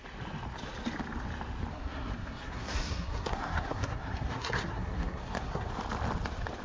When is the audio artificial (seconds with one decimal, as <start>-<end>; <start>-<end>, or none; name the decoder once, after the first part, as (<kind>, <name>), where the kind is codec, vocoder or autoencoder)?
1.7-5.7 (codec, SNAC)